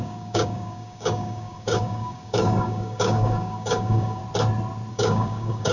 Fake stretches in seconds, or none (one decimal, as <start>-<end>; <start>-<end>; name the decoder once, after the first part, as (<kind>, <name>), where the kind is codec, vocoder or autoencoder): 0.0-4.2 (codec, DAC); 4.9-5.7